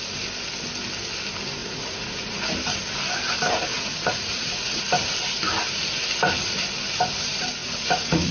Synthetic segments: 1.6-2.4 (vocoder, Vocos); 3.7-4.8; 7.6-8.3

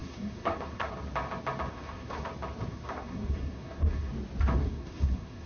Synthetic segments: 0.0-0.9 (codec, SNAC); 1.7-2.3; 2.7-4.1; 4.6-5.5

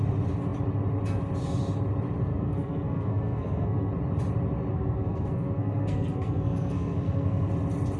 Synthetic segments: 2.3-3.9 (codec, SNAC); 4.7-7.5

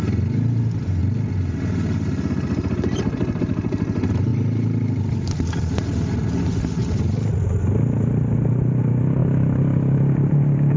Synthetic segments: none

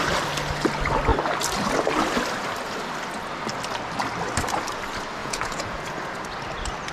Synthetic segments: 5.2-5.8 (vocoder, Vocos)

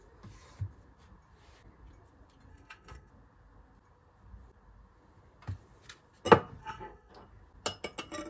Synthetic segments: 2.5-3.1 (codec, SNAC); 6.6-7.1

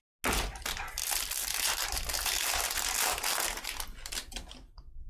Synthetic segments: none

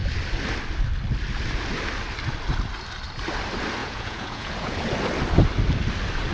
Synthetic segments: 3.8-4.9 (vocoder, Vocos)